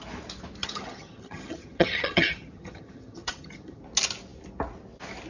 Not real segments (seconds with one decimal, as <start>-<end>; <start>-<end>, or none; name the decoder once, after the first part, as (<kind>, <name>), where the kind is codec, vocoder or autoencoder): 0.6-3.8 (vocoder, HiFi-GAN)

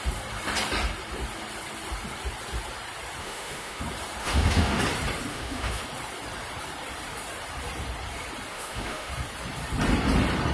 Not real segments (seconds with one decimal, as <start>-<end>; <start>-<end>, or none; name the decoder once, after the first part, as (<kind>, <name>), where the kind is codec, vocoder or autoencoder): 3.2-3.8 (autoencoder, DAC-VAE); 4.2-4.8; 5.3-5.8; 8.5-9.1

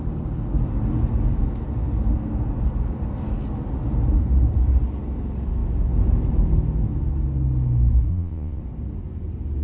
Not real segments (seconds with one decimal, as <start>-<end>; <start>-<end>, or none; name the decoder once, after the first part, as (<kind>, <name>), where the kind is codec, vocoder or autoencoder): 8.1-8.6 (vocoder, Vocos)

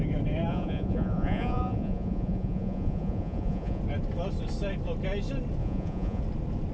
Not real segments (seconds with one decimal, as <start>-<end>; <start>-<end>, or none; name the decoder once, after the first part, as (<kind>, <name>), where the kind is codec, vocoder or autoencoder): 0.5-3.8 (vocoder, Vocos); 5.6-6.2

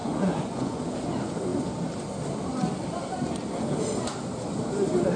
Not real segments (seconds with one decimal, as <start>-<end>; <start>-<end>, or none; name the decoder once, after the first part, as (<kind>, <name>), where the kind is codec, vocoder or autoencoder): 0.0-0.8 (vocoder, Vocos)

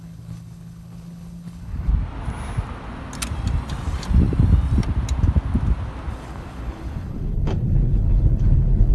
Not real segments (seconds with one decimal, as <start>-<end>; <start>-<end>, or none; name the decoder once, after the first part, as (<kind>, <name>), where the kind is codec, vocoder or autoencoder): 0.0-1.9 (codec, HILCodec); 6.1-8.9